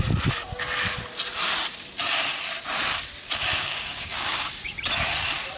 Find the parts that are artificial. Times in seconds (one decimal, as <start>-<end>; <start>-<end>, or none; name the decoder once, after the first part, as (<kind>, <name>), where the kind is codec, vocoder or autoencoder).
3.5-4.8 (codec, DAC)